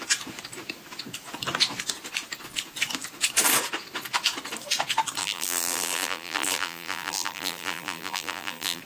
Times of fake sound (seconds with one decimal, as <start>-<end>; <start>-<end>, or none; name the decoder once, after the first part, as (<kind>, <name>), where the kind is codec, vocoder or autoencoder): 5.2-8.8 (vocoder, BigVGAN v2)